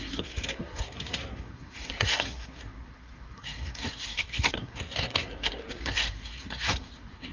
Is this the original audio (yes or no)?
no